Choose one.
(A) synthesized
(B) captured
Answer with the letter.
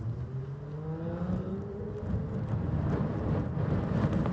B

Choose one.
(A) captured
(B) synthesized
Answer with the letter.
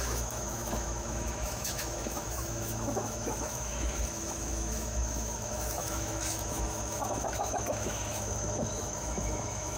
B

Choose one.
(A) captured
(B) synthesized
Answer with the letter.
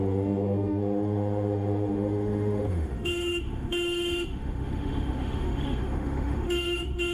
B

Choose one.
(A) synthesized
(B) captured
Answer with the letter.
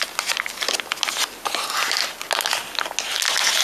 B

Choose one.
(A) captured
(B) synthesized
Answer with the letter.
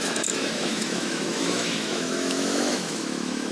B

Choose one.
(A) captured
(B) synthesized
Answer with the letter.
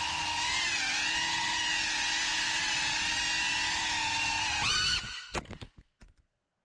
A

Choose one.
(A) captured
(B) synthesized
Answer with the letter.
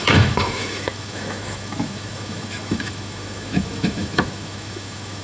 B